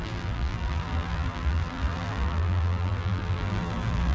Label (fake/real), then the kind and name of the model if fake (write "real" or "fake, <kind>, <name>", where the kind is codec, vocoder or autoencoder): fake, vocoder, BigVGAN v2